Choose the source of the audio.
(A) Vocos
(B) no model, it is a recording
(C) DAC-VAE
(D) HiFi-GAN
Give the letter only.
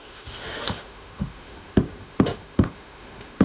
C